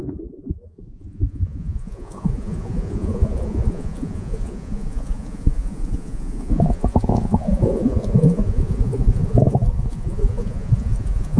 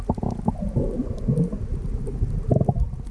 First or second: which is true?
second